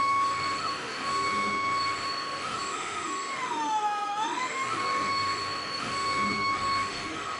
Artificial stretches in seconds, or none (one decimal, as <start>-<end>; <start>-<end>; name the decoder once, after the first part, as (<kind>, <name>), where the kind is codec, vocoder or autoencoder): 0.0-7.4 (autoencoder, DAC-VAE)